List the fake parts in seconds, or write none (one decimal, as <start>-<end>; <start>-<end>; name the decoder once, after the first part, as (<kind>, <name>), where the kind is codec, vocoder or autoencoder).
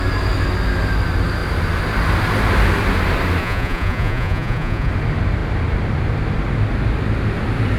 3.4-4.9 (vocoder, Vocos)